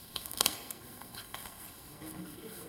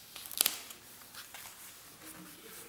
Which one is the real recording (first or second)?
second